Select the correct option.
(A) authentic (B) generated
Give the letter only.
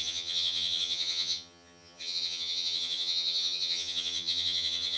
B